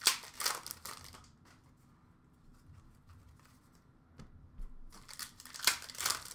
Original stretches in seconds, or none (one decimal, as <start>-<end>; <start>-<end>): 0.0-6.3